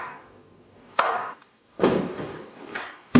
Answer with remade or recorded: remade